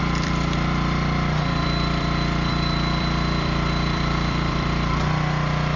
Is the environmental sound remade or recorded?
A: remade